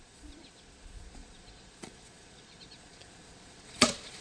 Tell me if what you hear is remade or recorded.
remade